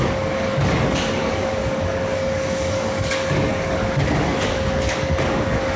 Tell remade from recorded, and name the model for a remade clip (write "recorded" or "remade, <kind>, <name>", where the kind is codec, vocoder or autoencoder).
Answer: remade, codec, DAC